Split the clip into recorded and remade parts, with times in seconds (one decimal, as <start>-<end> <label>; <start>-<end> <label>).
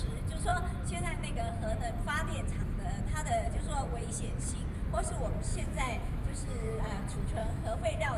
0.0-5.5 recorded; 5.5-6.8 remade; 6.8-7.4 recorded; 7.4-8.2 remade